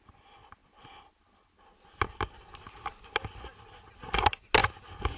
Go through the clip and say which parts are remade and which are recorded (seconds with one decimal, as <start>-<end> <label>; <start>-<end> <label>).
0.0-5.2 recorded